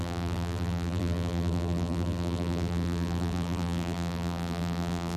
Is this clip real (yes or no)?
no